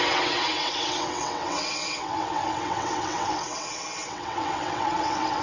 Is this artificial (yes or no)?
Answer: yes